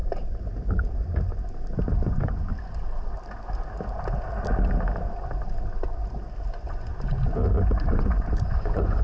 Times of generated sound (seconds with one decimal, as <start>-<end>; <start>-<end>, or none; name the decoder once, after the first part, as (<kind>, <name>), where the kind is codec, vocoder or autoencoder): 1.9-2.5 (vocoder, Vocos); 6.5-6.9; 7.9-9.0